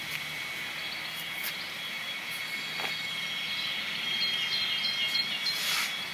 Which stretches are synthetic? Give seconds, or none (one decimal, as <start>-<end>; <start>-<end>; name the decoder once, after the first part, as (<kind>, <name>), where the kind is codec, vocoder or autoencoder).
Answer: none